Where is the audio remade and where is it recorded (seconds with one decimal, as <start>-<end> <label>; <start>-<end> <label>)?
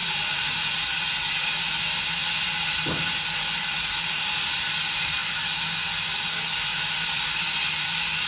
0.0-8.3 recorded